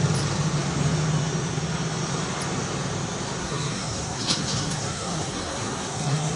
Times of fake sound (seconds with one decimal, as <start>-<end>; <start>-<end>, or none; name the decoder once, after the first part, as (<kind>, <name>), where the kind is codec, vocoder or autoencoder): 3.4-6.4 (codec, SNAC)